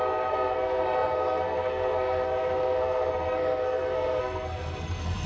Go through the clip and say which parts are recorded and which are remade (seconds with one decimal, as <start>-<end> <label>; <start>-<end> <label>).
0.0-5.3 remade